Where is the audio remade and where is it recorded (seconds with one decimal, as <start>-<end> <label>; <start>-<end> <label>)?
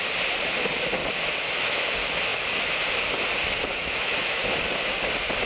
0.0-1.0 recorded; 1.0-1.9 remade; 1.9-3.7 recorded; 3.7-4.4 remade; 4.4-5.5 recorded